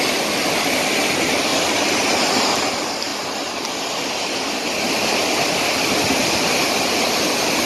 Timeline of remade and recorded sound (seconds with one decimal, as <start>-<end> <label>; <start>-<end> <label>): 0.0-7.7 recorded